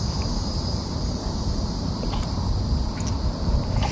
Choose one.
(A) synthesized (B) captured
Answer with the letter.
B